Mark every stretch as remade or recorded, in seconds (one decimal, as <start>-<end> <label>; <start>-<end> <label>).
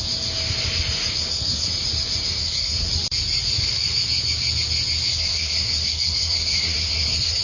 0.0-1.2 recorded; 1.2-1.7 remade; 1.7-2.4 recorded; 2.4-2.9 remade; 2.9-5.1 recorded; 5.1-7.4 remade